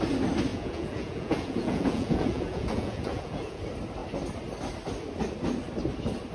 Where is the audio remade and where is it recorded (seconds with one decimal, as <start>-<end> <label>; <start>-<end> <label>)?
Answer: 0.0-0.5 recorded; 0.5-3.6 remade; 3.6-6.3 recorded